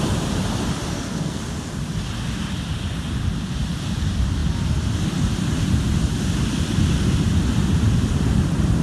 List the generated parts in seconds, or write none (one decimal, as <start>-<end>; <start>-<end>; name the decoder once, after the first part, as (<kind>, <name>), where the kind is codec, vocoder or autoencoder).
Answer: 0.9-1.4 (codec, SNAC)